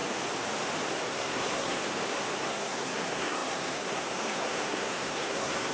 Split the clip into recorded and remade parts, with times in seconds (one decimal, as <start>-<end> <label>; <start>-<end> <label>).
0.0-1.1 recorded; 1.1-1.8 remade; 1.8-2.4 recorded; 2.4-5.7 remade